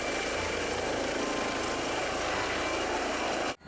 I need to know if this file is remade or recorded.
recorded